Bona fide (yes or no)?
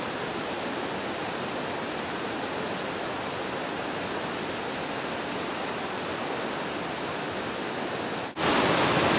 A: yes